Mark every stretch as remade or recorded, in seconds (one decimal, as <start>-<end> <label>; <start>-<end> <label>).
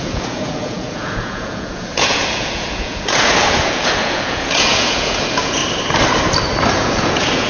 0.0-5.6 remade; 5.6-6.7 recorded; 6.7-7.5 remade